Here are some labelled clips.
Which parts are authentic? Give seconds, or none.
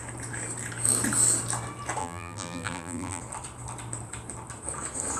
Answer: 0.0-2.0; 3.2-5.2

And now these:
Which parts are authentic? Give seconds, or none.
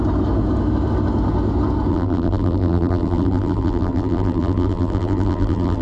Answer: 0.0-1.9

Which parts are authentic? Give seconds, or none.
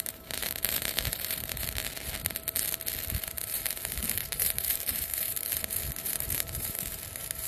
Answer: 1.8-3.1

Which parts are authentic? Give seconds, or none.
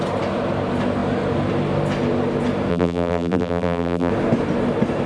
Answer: 0.0-2.7; 4.1-5.1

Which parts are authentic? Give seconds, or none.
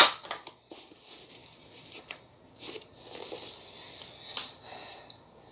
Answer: 0.0-1.4; 2.5-5.5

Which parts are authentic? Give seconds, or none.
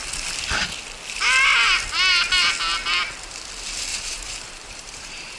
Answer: 0.0-3.9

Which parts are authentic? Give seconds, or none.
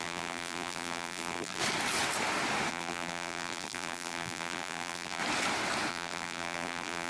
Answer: 1.6-2.7; 5.2-5.9